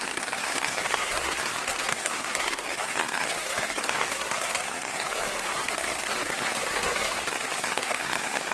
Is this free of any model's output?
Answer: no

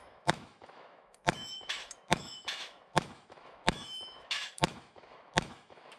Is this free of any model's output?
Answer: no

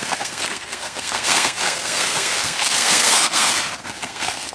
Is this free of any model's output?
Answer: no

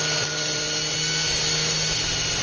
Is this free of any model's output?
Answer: yes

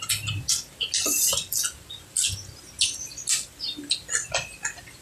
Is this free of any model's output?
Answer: yes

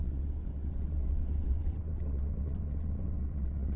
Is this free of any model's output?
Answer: no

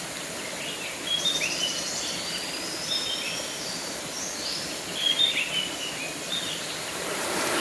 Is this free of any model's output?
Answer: yes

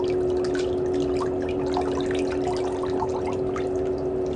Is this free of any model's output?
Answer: yes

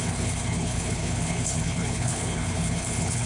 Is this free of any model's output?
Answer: no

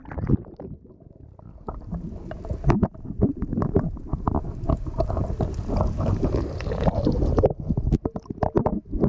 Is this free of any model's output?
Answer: yes